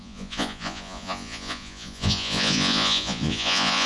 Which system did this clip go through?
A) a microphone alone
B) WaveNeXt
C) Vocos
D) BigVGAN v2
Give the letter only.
C